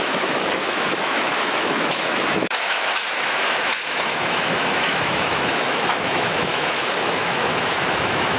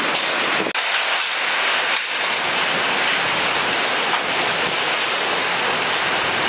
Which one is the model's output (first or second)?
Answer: first